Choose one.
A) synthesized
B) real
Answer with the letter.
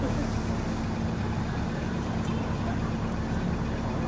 B